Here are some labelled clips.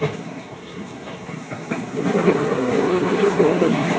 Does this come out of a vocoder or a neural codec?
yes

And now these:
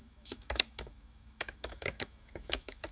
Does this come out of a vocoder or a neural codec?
yes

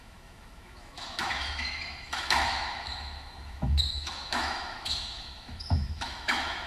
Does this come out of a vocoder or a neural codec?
yes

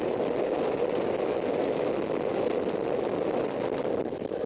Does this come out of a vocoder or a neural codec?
no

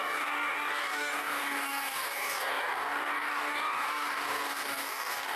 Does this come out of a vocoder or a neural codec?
yes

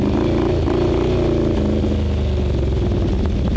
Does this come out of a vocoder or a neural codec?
no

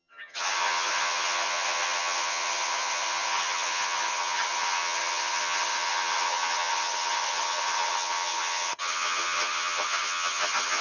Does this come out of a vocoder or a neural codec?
yes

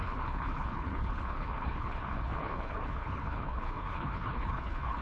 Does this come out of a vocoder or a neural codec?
yes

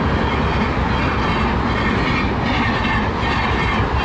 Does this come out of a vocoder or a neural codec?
no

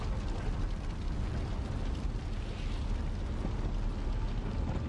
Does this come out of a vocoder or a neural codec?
no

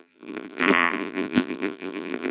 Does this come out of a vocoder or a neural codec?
yes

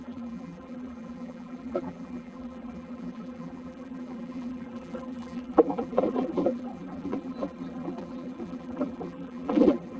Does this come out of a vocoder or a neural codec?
yes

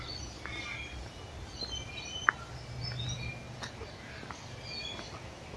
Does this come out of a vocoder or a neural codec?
no